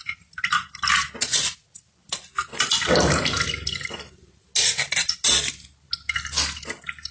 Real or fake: real